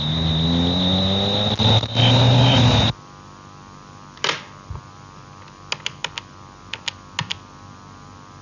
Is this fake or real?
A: real